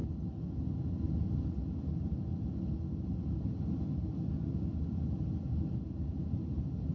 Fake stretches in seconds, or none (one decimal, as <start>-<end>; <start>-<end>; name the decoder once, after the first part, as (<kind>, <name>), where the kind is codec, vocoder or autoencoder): none